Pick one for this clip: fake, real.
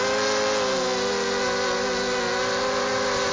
real